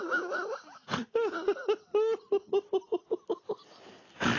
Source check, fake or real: real